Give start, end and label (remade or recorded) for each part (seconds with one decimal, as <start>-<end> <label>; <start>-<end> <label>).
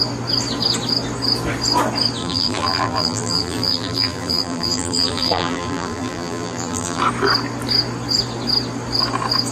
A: 0.0-2.2 recorded; 2.2-7.0 remade; 7.0-9.5 recorded